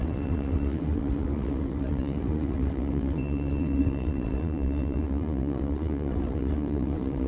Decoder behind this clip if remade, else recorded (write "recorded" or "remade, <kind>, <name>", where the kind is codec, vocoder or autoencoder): remade, vocoder, WaveNeXt